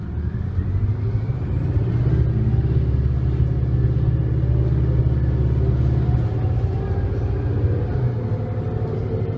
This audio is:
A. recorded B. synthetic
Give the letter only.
A